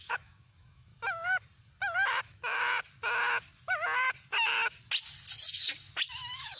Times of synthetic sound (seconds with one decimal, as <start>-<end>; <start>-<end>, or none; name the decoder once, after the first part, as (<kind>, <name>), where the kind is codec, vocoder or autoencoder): 0.0-0.9 (autoencoder, DAC-VAE); 2.2-2.6; 6.1-6.6